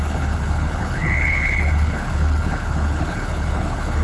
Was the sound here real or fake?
fake